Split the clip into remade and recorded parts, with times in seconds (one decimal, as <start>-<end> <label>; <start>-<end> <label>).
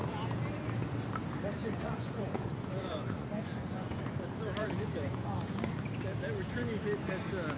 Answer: 0.0-1.6 recorded; 1.6-4.0 remade; 4.0-4.6 recorded; 4.6-5.7 remade; 5.7-7.6 recorded